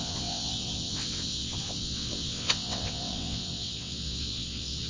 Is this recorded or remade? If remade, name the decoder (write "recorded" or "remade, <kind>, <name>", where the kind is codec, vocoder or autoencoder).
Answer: remade, vocoder, WaveNeXt